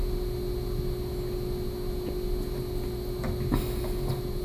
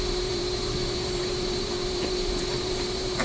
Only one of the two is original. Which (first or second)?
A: first